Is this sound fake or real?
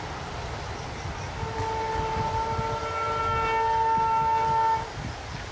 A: real